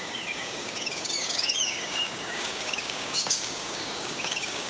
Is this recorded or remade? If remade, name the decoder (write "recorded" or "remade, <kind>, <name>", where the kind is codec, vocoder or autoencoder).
remade, codec, DAC